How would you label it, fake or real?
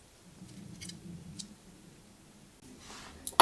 real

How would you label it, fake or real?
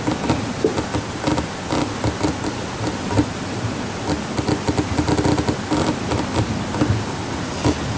real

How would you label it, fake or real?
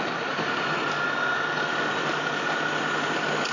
real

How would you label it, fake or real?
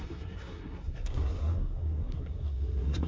fake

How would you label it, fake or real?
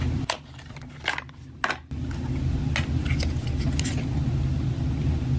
real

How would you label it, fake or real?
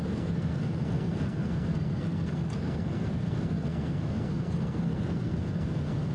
fake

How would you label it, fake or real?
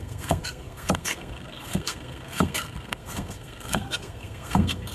fake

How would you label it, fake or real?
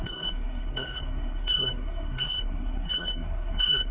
fake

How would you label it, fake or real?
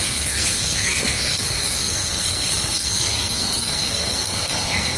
fake